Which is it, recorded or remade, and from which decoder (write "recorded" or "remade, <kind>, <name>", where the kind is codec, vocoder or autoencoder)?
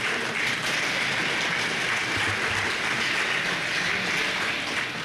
recorded